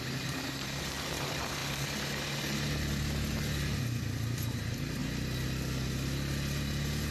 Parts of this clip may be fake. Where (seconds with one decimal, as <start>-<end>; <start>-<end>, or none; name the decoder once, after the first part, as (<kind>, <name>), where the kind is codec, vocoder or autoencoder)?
0.0-1.6 (vocoder, BigVGAN v2); 3.8-5.0